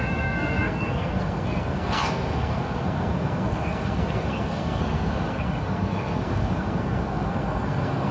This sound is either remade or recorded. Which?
remade